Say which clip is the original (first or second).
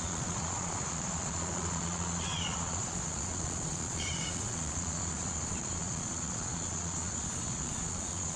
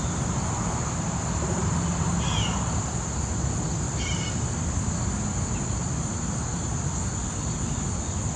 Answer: second